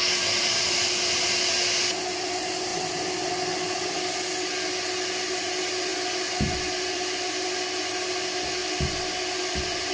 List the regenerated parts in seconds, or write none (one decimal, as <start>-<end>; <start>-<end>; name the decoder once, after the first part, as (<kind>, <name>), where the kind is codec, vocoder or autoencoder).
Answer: 0.0-2.7 (vocoder, BigVGAN v2); 5.3-5.9; 6.9-8.6; 9.5-9.9